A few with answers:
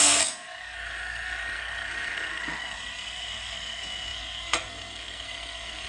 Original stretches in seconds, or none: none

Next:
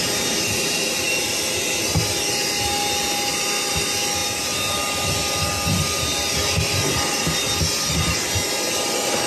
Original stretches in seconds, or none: 0.0-9.3

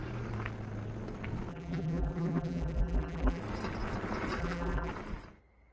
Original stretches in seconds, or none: 0.0-1.5; 3.4-4.4; 4.9-5.7

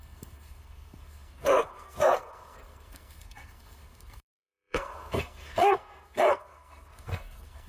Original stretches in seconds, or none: none

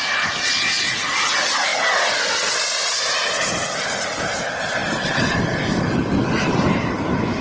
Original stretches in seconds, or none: 0.0-7.4